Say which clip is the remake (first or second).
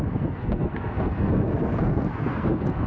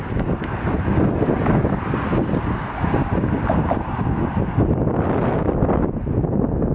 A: first